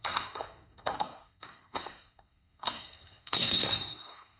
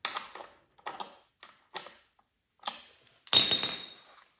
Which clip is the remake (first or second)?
first